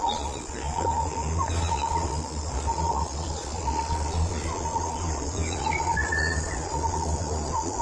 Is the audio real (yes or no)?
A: no